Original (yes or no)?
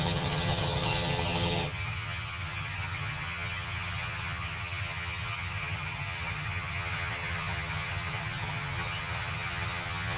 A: no